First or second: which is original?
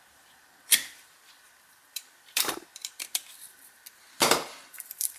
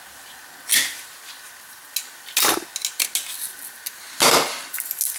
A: second